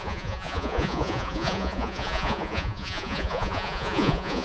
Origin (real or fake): fake